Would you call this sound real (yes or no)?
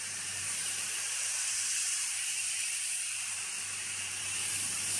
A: no